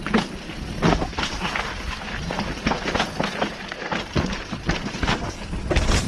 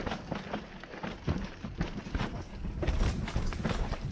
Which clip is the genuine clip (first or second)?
first